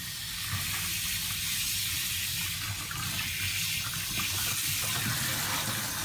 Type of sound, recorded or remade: recorded